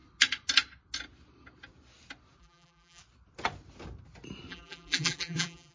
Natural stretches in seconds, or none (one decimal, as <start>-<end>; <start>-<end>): 0.0-2.4; 3.0-4.5